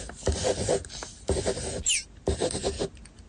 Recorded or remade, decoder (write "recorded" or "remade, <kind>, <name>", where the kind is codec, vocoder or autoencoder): recorded